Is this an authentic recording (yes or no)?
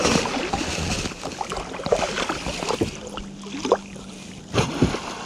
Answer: yes